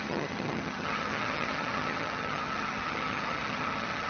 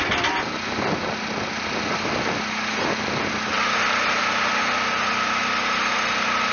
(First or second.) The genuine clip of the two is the second